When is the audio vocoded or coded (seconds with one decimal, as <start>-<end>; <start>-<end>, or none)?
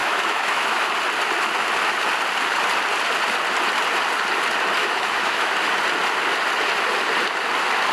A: 0.0-0.9; 4.8-5.5